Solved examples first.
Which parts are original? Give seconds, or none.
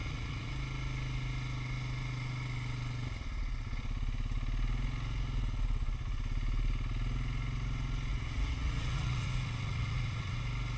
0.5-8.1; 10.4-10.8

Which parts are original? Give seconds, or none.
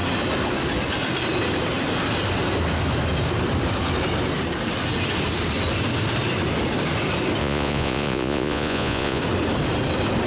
0.0-7.4; 9.2-10.3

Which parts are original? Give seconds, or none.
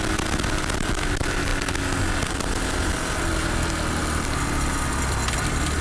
0.0-5.8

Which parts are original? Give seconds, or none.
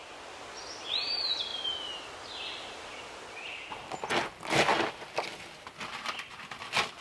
0.0-7.0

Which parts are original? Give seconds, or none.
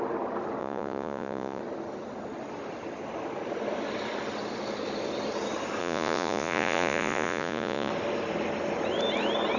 0.0-0.6; 1.6-5.8; 7.9-9.6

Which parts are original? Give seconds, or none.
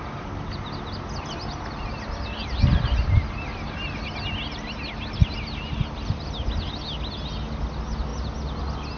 0.0-9.0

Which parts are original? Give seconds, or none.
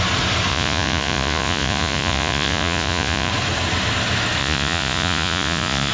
0.0-0.5; 3.3-4.4